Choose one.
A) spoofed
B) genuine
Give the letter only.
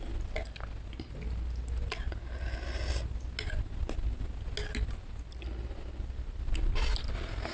B